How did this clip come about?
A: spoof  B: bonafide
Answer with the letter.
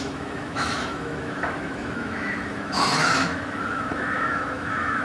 A